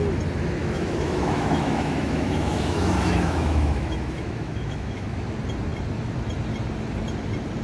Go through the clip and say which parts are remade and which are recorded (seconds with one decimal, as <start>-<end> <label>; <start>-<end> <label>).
0.0-0.6 recorded; 0.6-5.2 remade; 5.2-7.6 recorded